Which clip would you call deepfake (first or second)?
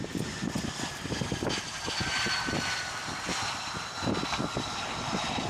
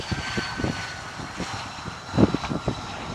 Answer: second